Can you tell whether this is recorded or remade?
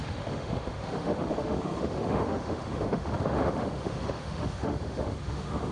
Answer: remade